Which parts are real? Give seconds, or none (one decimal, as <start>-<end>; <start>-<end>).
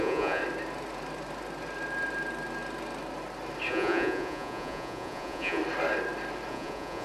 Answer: 0.4-3.7; 5.6-6.5